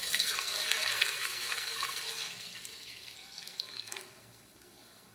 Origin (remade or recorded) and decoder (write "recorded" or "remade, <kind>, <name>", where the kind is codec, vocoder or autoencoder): remade, codec, SNAC